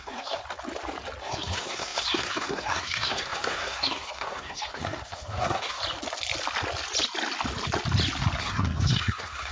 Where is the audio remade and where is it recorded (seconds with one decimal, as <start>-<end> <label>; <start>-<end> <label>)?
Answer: 0.0-0.4 remade; 0.4-1.2 recorded; 1.2-5.8 remade; 5.8-8.4 recorded; 8.4-9.5 remade